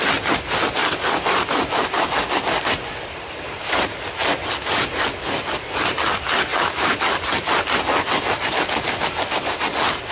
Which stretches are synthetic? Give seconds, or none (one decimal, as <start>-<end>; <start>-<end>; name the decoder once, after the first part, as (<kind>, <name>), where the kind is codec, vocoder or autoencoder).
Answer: 0.8-2.1 (vocoder, BigVGAN v2); 6.5-7.0